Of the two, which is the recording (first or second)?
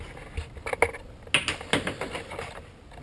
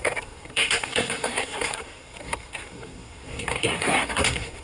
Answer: first